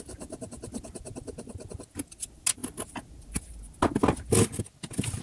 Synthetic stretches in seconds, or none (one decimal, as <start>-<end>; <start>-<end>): none